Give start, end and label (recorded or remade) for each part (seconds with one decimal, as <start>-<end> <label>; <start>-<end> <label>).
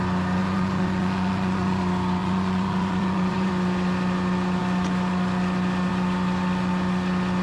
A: 0.0-0.4 recorded; 0.4-1.8 remade; 1.8-2.2 recorded; 2.2-3.5 remade; 3.5-7.4 recorded